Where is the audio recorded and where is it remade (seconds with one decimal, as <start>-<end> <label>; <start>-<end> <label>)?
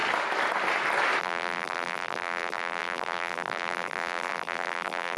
0.0-1.2 recorded; 1.2-5.2 remade